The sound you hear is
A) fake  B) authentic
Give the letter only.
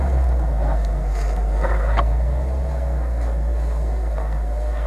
A